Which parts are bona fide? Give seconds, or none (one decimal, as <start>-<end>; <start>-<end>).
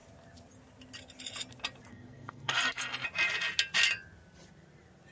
0.0-1.9; 2.8-5.1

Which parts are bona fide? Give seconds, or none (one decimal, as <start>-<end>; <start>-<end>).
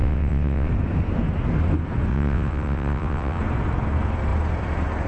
0.7-2.1; 3.4-5.1